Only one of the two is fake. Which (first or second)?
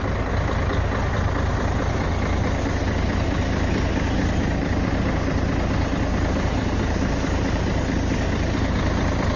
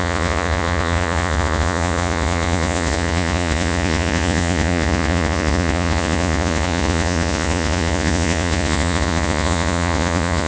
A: second